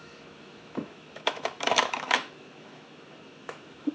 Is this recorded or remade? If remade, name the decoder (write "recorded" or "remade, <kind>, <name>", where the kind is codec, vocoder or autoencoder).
remade, autoencoder, DAC-VAE